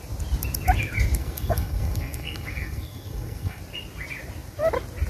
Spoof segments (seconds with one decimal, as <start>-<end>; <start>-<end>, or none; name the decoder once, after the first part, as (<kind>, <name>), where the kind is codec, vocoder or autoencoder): 1.2-3.6 (codec, SNAC)